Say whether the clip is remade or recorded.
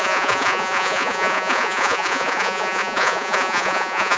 remade